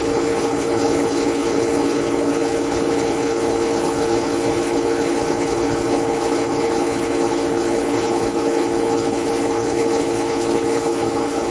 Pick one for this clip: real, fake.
fake